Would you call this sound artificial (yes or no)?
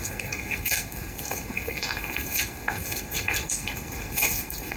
yes